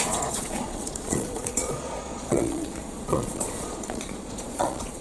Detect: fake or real fake